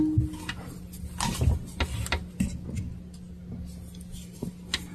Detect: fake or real real